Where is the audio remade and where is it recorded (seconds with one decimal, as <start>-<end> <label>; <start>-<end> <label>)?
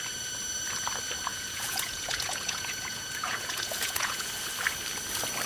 0.0-1.3 recorded; 1.3-4.3 remade; 4.3-5.5 recorded